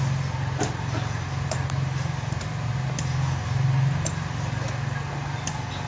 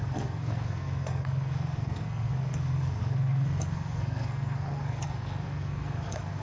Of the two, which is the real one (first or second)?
first